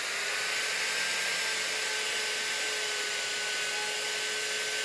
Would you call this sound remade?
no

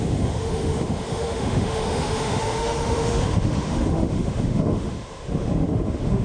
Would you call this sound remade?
yes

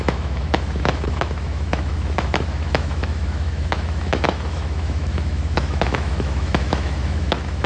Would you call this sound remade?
yes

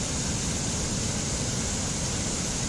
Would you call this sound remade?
no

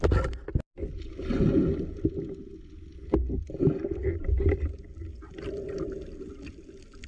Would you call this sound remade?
no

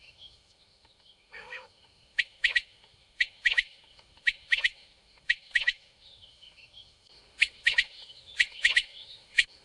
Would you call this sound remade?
yes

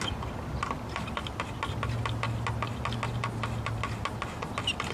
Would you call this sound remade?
no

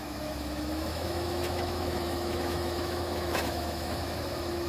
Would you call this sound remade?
yes